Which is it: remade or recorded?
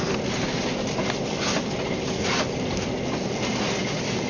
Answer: recorded